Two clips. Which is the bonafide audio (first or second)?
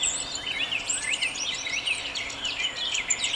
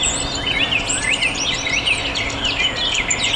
second